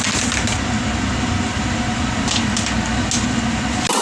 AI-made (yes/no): no